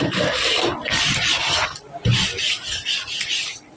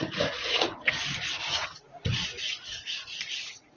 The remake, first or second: second